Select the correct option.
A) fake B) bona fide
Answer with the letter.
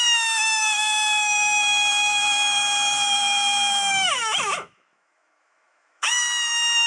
A